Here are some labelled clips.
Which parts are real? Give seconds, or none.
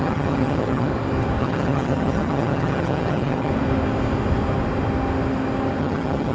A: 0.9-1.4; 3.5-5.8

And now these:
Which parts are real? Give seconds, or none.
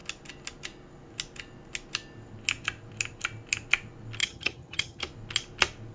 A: 0.0-4.2; 5.0-5.9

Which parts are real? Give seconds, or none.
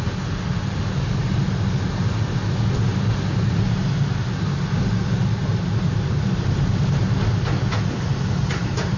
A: 0.0-9.0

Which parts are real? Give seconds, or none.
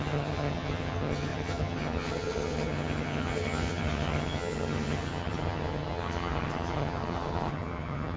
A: none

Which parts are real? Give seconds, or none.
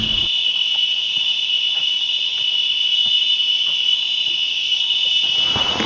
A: 0.0-5.9